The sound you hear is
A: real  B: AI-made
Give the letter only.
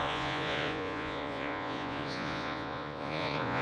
B